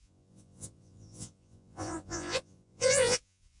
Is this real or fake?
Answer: fake